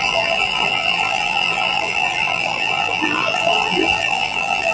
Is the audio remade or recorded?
remade